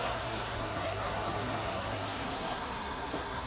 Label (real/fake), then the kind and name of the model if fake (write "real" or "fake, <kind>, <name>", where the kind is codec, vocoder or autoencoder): fake, codec, SNAC